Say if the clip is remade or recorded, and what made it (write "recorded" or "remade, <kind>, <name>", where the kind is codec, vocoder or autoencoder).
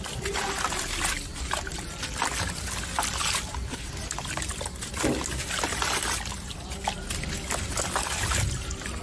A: recorded